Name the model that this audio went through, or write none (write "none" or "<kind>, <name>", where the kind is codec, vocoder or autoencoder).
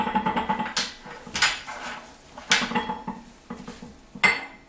none